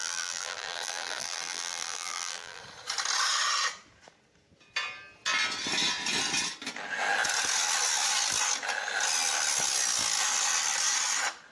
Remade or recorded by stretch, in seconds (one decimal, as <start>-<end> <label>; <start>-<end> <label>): 0.0-2.6 remade; 2.6-11.5 recorded